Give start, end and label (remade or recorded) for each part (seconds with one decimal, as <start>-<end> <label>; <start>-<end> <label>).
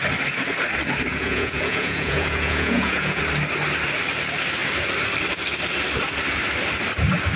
0.0-1.1 recorded; 1.1-3.2 remade; 3.2-7.4 recorded